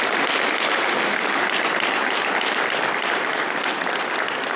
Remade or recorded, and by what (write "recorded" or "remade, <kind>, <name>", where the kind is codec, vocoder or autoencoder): remade, vocoder, BigVGAN v2